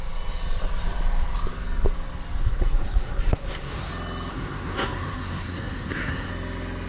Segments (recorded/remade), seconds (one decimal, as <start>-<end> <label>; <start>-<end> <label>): 0.0-2.4 recorded; 2.4-3.9 remade; 3.9-4.3 recorded; 4.3-6.3 remade; 6.3-6.9 recorded